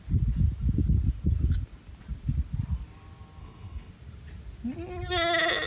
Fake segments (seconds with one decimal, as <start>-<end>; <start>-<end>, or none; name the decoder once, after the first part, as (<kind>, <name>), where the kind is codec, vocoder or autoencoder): 3.4-3.9 (codec, HILCodec)